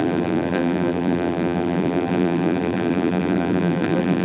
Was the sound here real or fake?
fake